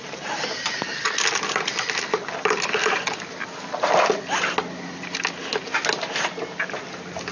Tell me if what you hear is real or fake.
real